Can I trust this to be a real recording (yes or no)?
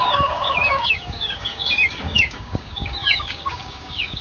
no